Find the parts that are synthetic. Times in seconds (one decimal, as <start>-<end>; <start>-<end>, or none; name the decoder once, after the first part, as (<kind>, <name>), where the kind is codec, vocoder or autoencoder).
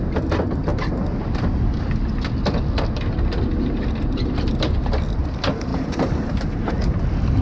5.7-6.7 (vocoder, BigVGAN v2)